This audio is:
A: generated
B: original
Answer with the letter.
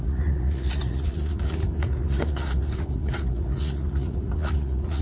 A